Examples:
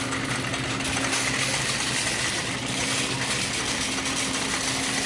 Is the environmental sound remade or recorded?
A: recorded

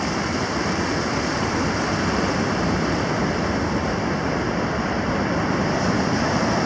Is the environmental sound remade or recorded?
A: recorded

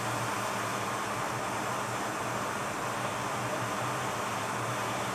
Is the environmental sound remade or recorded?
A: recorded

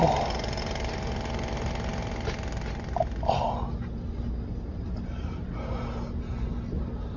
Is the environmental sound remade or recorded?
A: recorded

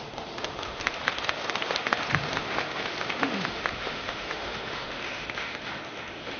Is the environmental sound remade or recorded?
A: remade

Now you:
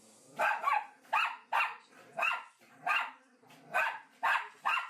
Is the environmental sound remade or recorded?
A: recorded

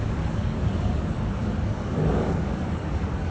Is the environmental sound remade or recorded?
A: remade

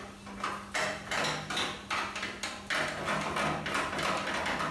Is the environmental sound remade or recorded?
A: recorded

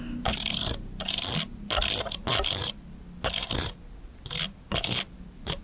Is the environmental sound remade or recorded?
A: recorded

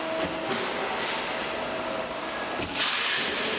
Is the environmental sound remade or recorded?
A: recorded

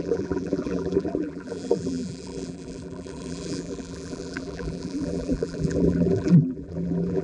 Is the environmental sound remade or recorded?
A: remade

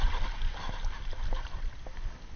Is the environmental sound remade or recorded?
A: recorded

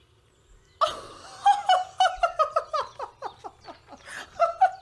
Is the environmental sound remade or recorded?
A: recorded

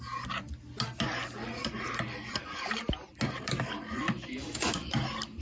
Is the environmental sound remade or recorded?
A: recorded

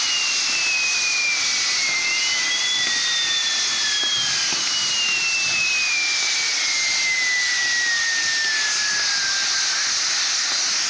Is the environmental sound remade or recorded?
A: recorded